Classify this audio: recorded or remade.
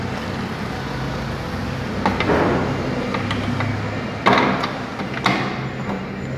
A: recorded